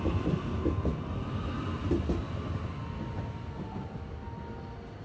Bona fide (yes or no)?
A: yes